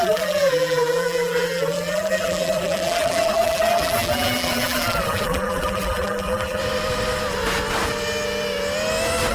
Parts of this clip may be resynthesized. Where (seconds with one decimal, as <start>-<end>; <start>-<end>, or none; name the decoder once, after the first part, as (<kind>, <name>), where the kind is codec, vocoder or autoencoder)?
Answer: 0.0-6.6 (vocoder, BigVGAN v2)